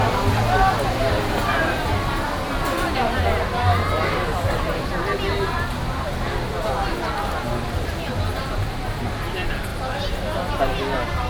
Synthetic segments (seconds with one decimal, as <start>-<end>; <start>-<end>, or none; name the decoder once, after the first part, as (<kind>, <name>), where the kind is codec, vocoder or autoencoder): none